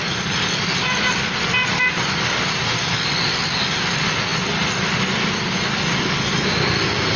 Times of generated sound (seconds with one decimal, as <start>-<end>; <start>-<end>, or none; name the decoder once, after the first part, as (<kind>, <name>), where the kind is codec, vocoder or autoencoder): none